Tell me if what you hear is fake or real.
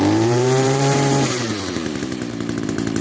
fake